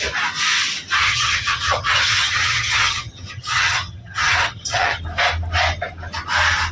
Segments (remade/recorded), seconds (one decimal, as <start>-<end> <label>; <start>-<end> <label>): 0.0-1.0 recorded; 1.0-5.0 remade; 5.0-6.7 recorded